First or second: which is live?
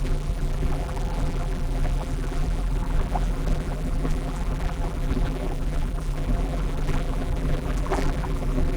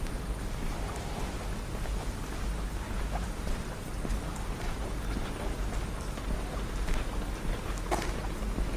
second